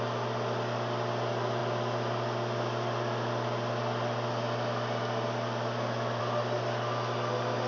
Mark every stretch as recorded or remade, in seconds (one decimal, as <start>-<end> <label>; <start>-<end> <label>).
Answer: 0.0-7.7 recorded